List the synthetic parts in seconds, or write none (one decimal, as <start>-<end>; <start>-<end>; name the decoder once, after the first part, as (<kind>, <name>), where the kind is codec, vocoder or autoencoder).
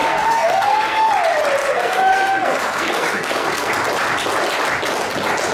0.0-1.1 (codec, SNAC); 1.6-3.7